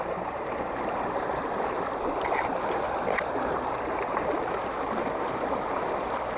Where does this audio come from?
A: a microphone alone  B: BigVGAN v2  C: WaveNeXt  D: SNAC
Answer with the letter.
B